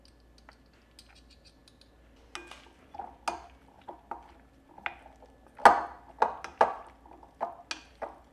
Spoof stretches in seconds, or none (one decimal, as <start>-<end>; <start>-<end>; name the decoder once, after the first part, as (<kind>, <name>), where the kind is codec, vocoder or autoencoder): none